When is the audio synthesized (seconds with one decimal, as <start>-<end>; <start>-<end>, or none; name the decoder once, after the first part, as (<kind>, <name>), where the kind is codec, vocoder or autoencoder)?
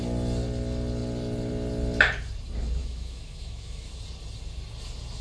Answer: 2.8-3.9 (autoencoder, DAC-VAE)